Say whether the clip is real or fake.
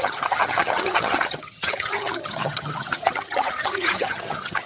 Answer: fake